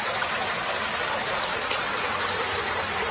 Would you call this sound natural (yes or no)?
yes